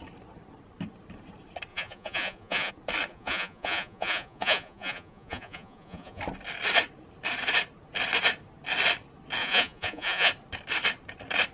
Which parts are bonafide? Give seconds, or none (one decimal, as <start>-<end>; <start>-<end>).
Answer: 0.0-1.7; 2.7-3.1; 6.2-9.4; 10.3-11.5